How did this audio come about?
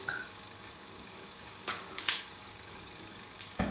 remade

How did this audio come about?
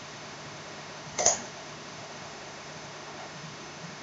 remade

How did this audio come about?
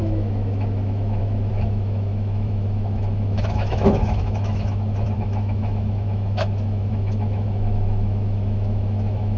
remade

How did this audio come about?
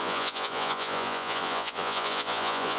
remade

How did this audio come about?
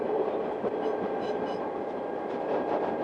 recorded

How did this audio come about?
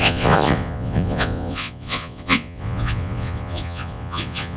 remade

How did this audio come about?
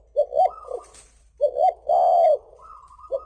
recorded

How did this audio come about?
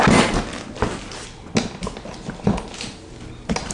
recorded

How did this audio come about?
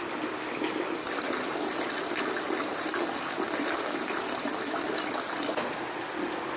recorded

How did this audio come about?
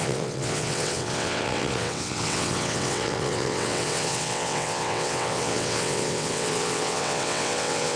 remade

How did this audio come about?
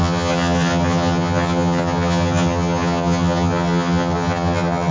remade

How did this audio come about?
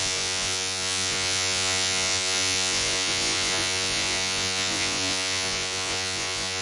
remade